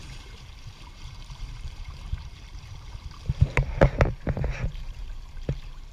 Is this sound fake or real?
fake